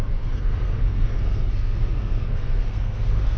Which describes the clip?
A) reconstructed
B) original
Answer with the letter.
A